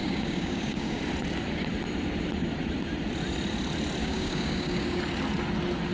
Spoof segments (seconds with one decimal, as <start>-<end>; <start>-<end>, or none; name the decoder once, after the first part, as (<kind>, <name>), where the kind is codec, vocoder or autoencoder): 0.0-1.0 (codec, DAC); 4.0-5.0